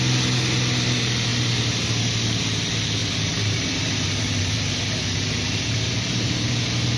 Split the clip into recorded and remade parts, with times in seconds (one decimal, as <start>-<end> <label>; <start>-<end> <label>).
0.0-3.0 recorded; 3.0-6.5 remade; 6.5-7.0 recorded